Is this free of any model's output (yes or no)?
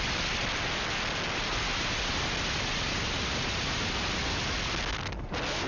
yes